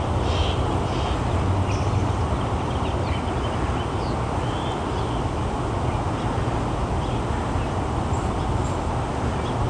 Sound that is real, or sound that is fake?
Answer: real